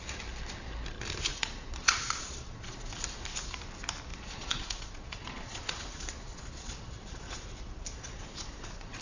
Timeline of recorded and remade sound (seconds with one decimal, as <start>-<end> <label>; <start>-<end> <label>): 0.0-1.3 recorded; 1.3-2.9 remade; 2.9-4.1 recorded; 4.1-9.0 remade